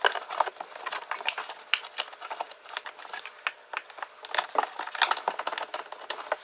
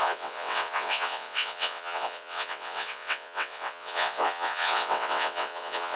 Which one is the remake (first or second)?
second